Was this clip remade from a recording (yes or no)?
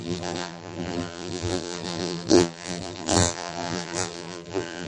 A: yes